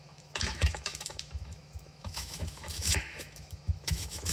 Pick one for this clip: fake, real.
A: fake